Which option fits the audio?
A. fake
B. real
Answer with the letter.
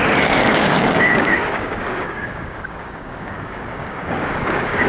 A